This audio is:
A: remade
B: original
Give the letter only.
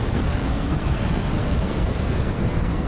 A